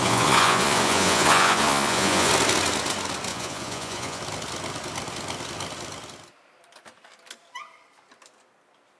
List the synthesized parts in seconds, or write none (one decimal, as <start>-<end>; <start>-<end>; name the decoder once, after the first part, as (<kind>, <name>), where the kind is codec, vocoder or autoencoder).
0.0-2.3 (vocoder, Vocos); 3.3-4.2